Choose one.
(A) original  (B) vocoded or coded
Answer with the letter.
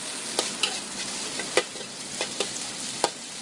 A